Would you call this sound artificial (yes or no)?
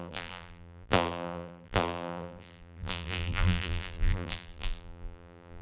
yes